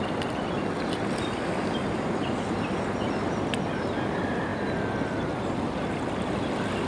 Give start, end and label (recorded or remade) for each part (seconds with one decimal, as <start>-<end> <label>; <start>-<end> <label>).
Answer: 0.0-6.9 recorded